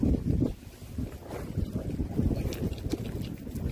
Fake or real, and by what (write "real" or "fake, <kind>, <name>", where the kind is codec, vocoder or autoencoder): real